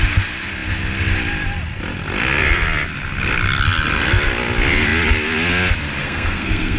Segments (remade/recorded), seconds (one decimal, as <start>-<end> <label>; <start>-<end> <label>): 0.0-6.0 recorded; 6.0-6.8 remade